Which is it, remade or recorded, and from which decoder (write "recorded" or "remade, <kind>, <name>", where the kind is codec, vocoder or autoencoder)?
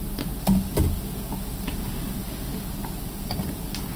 recorded